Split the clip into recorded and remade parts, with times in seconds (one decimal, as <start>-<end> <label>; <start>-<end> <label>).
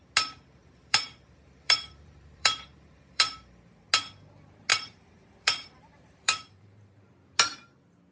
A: 0.0-0.6 recorded; 0.6-3.8 remade; 3.8-4.7 recorded; 4.7-7.1 remade; 7.1-8.1 recorded